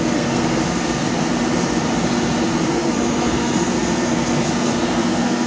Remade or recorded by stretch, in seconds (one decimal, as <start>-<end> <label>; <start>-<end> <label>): 0.0-1.3 remade; 1.3-2.7 recorded; 2.7-5.5 remade